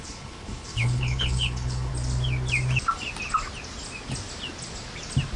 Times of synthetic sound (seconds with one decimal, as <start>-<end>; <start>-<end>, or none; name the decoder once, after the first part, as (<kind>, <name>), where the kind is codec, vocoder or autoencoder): 0.0-1.9 (codec, HILCodec)